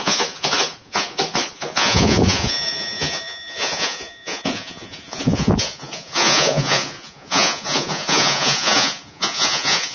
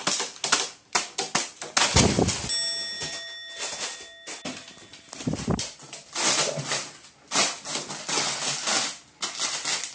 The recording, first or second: second